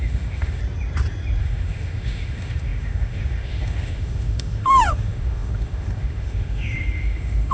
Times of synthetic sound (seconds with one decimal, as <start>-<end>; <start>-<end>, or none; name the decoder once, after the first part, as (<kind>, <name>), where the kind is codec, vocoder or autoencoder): 0.0-0.6 (autoencoder, DAC-VAE); 1.4-7.5